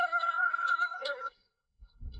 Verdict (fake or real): fake